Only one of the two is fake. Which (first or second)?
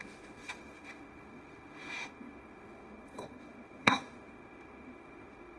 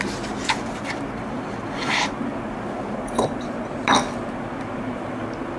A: first